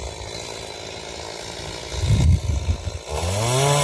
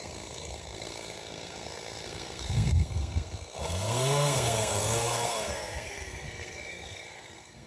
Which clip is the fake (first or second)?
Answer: second